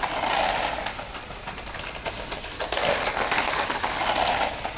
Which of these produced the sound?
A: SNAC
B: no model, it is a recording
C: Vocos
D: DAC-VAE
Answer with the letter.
B